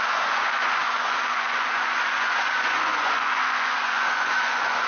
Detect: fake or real fake